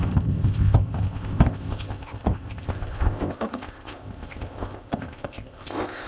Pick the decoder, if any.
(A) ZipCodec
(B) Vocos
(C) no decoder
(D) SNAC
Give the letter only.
A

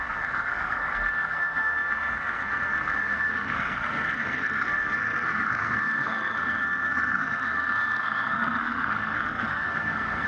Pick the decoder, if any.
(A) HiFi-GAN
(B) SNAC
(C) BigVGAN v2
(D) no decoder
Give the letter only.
B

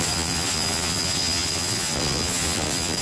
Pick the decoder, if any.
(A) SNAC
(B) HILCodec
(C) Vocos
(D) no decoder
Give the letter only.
C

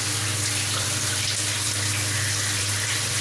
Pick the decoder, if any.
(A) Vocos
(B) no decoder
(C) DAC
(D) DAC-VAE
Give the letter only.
B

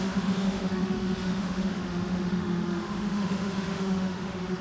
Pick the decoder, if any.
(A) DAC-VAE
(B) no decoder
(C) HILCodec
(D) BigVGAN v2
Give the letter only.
A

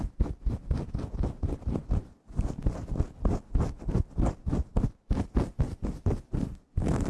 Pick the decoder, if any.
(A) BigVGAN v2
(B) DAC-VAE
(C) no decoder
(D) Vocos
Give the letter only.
C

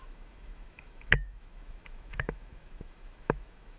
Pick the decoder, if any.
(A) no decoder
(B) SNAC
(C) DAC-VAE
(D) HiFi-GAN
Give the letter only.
C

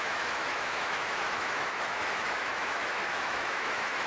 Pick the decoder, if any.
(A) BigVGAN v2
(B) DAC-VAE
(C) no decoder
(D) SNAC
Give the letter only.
B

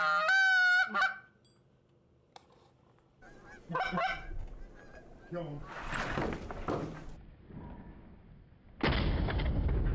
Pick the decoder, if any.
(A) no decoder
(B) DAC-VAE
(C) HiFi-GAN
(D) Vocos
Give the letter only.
A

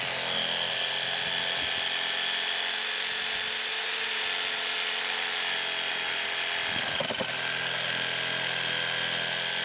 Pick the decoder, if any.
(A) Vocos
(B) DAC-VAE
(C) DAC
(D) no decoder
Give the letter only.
D